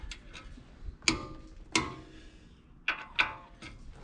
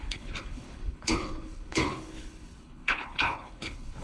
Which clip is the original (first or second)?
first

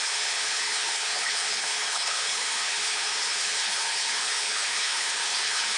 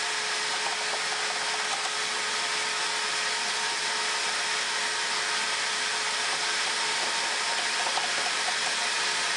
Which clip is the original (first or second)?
second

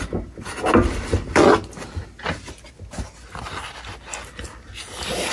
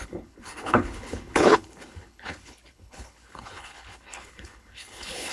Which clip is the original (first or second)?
first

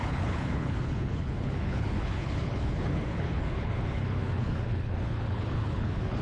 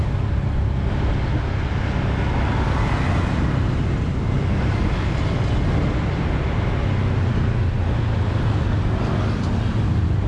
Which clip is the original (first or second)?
second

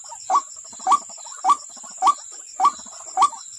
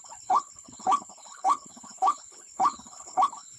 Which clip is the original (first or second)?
first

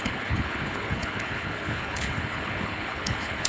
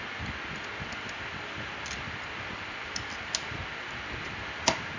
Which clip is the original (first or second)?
second